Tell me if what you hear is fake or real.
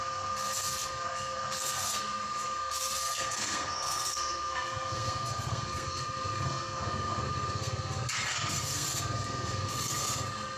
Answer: fake